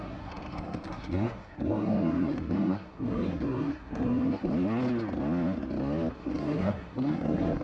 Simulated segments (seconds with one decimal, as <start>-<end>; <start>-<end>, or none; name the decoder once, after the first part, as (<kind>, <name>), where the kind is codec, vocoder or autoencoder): 0.0-4.5 (codec, SNAC); 6.1-7.6